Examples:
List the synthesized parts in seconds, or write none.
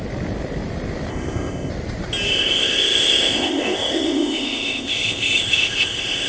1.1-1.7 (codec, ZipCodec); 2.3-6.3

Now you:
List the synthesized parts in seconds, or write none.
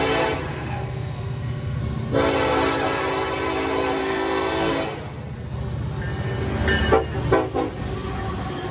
0.5-1.8 (codec, SNAC); 4.0-4.7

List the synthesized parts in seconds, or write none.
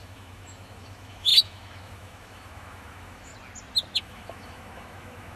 0.0-3.3 (autoencoder, DAC-VAE); 4.0-5.4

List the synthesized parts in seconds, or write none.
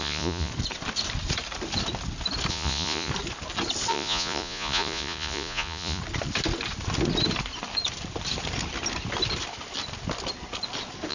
0.0-0.5 (vocoder, Vocos); 2.5-3.1; 3.9-6.0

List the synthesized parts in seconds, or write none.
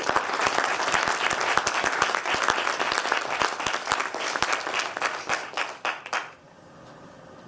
none